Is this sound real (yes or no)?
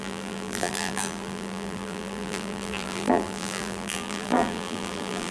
no